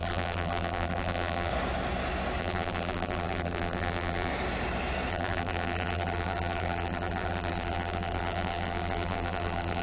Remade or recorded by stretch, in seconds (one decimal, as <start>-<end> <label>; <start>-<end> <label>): 0.0-1.5 remade; 1.5-2.4 recorded; 2.4-4.3 remade; 4.3-5.1 recorded; 5.1-9.8 remade